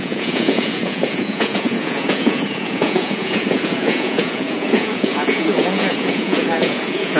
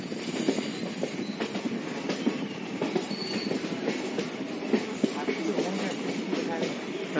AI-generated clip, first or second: first